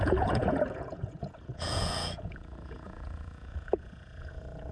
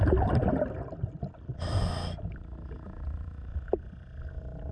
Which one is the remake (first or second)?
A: first